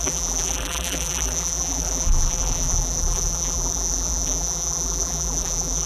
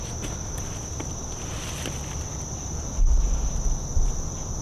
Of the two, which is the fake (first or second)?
first